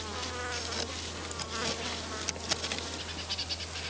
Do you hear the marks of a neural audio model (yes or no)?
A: no